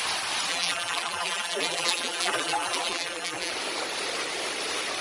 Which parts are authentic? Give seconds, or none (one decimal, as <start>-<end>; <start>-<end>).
0.0-0.5; 3.5-5.0